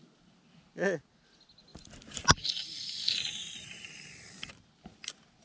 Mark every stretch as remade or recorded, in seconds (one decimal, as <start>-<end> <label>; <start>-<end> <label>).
0.0-5.4 recorded